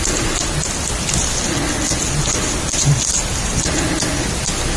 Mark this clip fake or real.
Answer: real